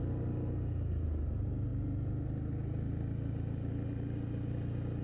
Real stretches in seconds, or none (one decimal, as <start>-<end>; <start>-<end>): 0.0-5.0